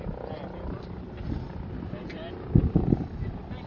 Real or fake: real